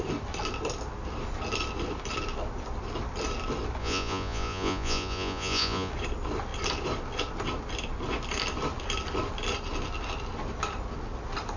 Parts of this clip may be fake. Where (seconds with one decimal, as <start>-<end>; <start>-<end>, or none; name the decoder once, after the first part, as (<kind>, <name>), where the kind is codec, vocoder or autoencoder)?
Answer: 3.8-5.9 (vocoder, Vocos)